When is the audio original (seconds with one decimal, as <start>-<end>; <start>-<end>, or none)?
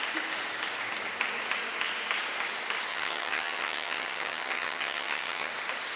0.0-2.9; 5.5-6.0